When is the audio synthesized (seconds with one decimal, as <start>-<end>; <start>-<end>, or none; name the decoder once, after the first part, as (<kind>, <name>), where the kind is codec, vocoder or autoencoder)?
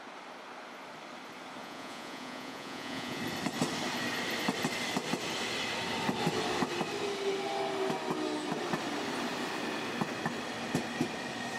1.6-3.2 (vocoder, Vocos)